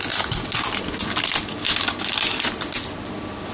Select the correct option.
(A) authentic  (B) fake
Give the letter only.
A